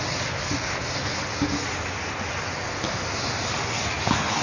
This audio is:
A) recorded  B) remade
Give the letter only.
A